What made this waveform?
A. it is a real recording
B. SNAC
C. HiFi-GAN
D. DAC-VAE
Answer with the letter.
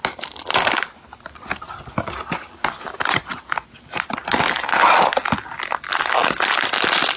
A